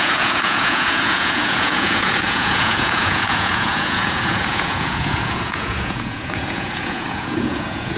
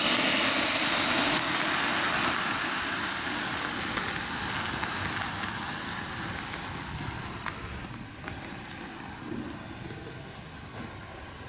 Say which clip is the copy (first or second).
first